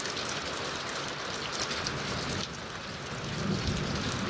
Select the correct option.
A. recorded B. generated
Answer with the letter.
A